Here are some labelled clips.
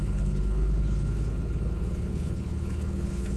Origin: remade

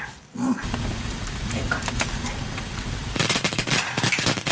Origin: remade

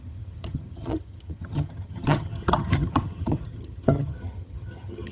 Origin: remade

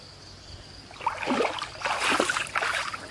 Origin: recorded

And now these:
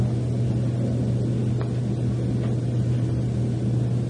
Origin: recorded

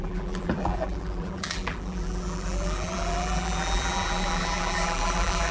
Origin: remade